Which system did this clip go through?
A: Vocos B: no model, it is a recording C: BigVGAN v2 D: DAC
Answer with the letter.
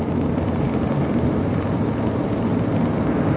B